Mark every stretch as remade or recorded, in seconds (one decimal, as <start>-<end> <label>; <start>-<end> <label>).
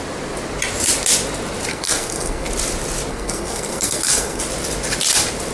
0.0-1.7 recorded; 1.7-2.5 remade; 2.5-3.1 recorded; 3.1-4.4 remade; 4.4-5.5 recorded